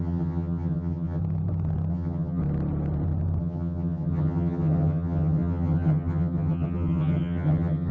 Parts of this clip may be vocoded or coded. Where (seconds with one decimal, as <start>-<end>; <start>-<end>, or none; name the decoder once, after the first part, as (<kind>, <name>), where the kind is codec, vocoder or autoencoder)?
0.0-1.2 (vocoder, HiFi-GAN); 1.9-2.4; 3.4-7.9